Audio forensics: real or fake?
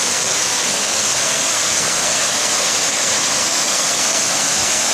fake